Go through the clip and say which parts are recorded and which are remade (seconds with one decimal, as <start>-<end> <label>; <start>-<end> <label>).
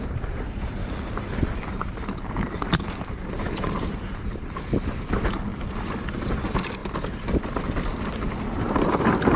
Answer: 0.0-5.5 remade; 5.5-6.1 recorded; 6.1-6.8 remade; 6.8-8.5 recorded; 8.5-9.4 remade